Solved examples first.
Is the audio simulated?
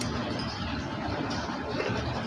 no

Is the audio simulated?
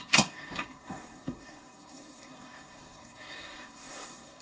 yes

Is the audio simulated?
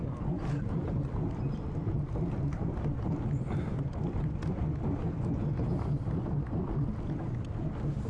no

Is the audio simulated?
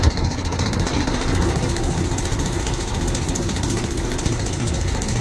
yes